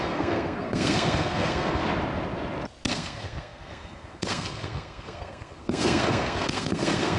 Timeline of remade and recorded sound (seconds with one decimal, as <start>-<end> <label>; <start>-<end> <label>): 0.0-1.8 remade; 1.8-2.9 recorded; 2.9-7.2 remade